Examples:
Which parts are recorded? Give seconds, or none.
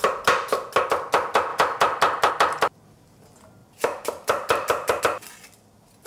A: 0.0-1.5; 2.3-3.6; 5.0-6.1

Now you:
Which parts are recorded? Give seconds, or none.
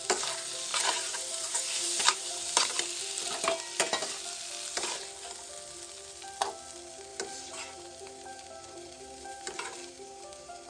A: 0.0-0.7; 2.8-7.1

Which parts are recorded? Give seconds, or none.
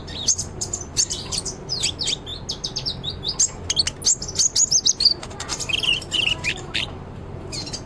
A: 2.3-4.8